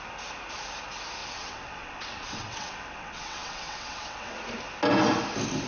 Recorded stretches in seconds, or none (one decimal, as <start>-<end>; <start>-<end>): 0.0-1.2; 4.4-5.7

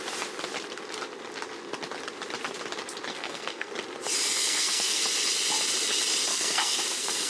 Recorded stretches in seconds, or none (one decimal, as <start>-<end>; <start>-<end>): 0.0-3.1; 3.7-4.4; 5.0-6.3